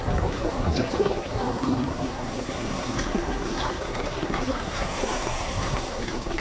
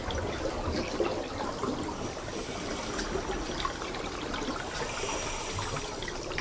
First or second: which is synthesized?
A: first